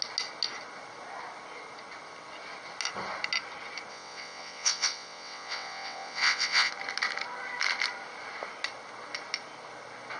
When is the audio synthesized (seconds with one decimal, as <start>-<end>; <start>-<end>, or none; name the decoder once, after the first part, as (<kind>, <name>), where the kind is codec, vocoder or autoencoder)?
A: 3.9-6.7 (vocoder, WaveNeXt)

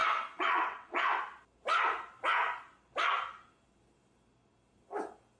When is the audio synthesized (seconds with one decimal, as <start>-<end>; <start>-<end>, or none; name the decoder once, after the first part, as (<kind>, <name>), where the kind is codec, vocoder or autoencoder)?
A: 0.0-1.2 (vocoder, WaveNeXt)

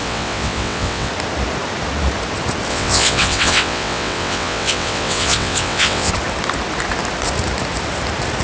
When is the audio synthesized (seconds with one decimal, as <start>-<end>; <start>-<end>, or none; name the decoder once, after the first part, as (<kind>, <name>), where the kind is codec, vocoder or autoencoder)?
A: 0.0-1.1 (vocoder, WaveNeXt); 2.7-6.1

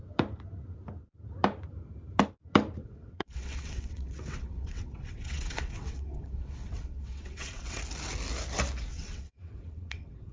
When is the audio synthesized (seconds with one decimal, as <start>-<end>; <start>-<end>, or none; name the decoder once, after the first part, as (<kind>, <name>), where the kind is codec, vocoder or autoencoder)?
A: 2.8-7.8 (vocoder, WaveNeXt); 8.9-10.3